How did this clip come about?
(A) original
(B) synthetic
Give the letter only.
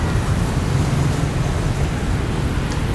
A